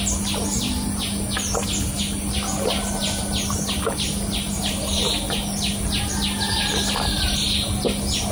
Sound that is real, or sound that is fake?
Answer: real